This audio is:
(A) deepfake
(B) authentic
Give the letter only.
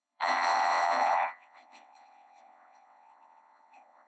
A